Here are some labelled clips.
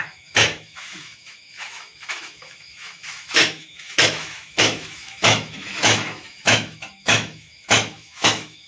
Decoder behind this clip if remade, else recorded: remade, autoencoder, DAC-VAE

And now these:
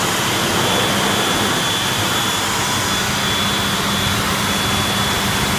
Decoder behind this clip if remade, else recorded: recorded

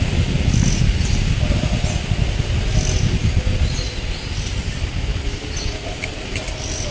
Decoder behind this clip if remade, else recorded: recorded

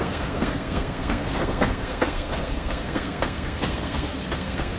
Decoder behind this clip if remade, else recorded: remade, codec, SNAC